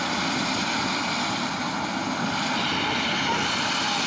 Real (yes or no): yes